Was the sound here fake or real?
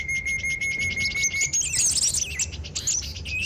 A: real